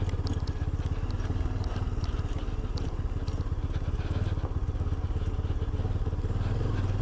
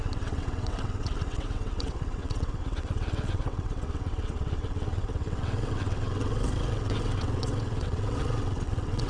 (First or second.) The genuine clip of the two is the first